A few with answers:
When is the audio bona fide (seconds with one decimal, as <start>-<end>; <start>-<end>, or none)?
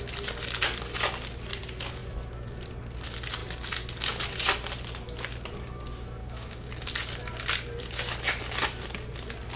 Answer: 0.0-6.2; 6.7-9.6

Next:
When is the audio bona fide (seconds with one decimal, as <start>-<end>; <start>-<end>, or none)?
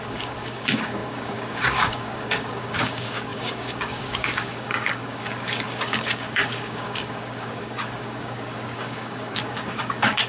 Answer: none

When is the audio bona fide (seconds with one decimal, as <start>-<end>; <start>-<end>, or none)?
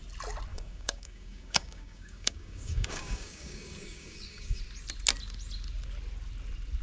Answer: 0.0-0.5; 4.6-6.8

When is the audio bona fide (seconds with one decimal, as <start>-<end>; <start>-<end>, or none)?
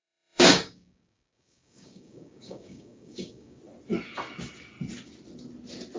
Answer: 3.6-6.0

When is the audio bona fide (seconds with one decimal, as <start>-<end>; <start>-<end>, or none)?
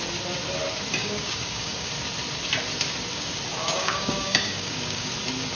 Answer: 0.0-1.0; 1.9-3.5; 5.1-5.5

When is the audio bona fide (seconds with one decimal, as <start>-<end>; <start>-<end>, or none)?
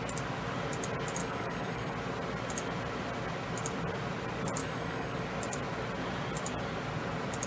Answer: 0.0-1.2; 1.9-4.6; 5.2-7.5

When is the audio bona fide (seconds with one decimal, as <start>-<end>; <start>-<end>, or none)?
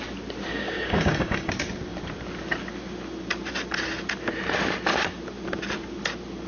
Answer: 0.0-0.5; 1.5-6.5